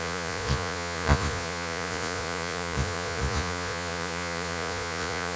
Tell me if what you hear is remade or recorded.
remade